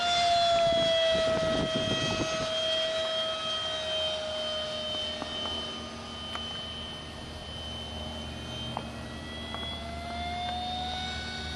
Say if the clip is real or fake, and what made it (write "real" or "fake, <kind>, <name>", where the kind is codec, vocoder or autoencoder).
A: real